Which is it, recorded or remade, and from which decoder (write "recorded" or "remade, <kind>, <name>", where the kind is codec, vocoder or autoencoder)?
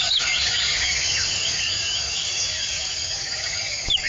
remade, codec, DAC